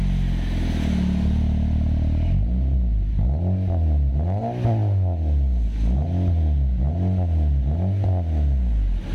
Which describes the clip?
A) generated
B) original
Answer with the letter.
B